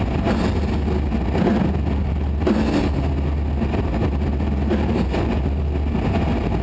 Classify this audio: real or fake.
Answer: real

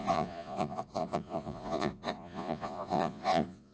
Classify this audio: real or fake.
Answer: fake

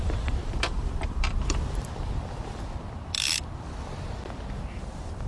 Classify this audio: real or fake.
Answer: fake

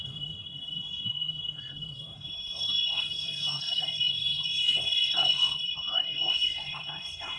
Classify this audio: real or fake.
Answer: fake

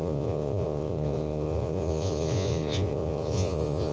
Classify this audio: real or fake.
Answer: fake